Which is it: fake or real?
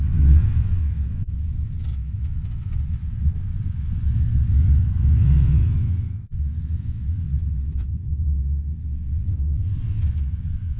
fake